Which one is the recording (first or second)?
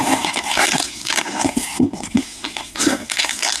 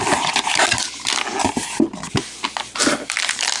second